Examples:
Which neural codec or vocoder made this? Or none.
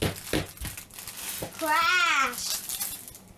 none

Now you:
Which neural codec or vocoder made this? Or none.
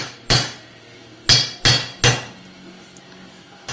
none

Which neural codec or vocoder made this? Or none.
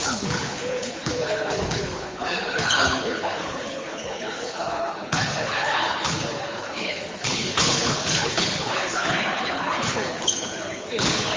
codec, HILCodec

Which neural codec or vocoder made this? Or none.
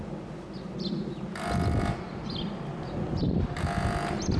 none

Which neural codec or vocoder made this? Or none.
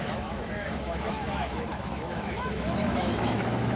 autoencoder, DAC-VAE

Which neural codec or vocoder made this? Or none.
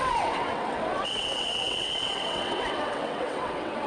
vocoder, WaveNeXt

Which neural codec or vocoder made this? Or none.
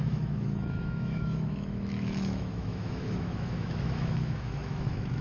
autoencoder, DAC-VAE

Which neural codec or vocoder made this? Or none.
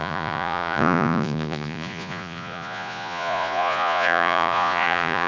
vocoder, Vocos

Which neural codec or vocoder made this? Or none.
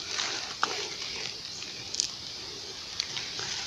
none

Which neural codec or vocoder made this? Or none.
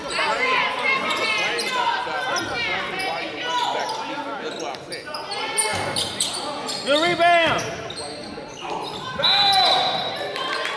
none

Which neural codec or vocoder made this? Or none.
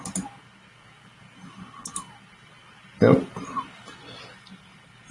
none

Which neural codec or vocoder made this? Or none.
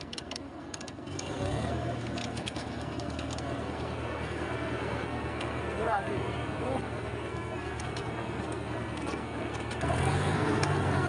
codec, SNAC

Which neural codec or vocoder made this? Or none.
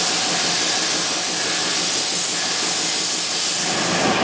none